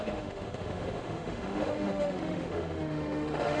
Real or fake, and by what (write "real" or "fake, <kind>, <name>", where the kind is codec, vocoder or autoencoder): fake, autoencoder, DAC-VAE